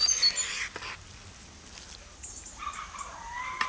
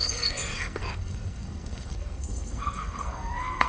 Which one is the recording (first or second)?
first